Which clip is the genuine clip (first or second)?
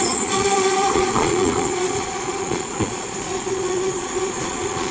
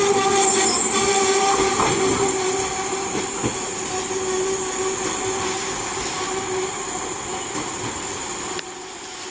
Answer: second